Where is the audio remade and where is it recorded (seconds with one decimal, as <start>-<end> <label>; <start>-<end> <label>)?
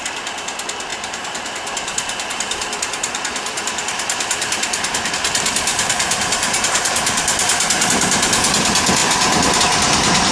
0.0-0.9 recorded; 0.9-5.1 remade; 5.1-5.7 recorded; 5.7-7.9 remade; 7.9-10.3 recorded